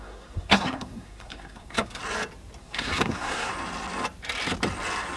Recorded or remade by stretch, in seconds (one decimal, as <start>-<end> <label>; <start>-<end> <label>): 0.0-2.0 remade; 2.0-2.6 recorded; 2.6-3.5 remade; 3.5-5.2 recorded